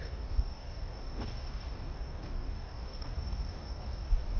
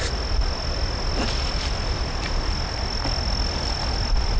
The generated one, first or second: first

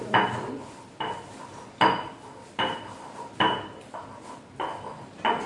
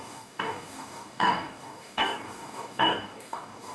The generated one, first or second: second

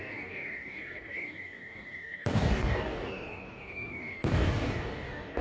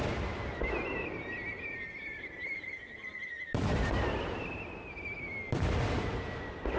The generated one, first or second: first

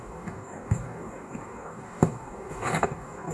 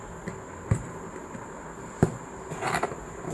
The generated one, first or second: first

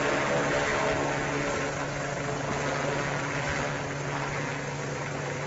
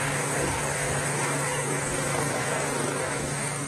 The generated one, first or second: second